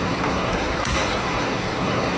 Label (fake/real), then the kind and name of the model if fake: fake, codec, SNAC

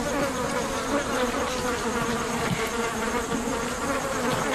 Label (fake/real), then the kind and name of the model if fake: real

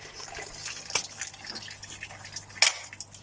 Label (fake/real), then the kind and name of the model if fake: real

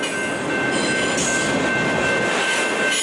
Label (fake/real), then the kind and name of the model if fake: real